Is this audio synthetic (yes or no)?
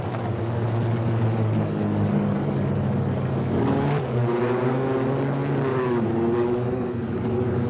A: yes